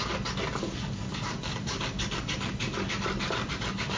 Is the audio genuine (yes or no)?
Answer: yes